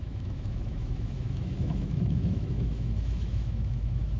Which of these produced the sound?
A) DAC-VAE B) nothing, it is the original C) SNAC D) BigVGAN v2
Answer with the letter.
A